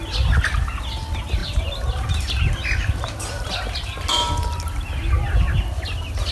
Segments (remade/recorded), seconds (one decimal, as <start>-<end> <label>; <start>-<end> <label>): 0.0-6.3 recorded